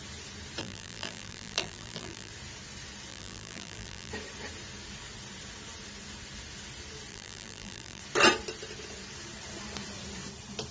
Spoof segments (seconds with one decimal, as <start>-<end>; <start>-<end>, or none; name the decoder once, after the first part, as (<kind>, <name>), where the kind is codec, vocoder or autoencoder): 0.6-2.3 (vocoder, BigVGAN v2); 3.1-4.1; 7.1-8.0